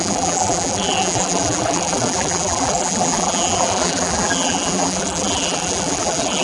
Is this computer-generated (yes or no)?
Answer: yes